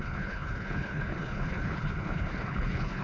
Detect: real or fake fake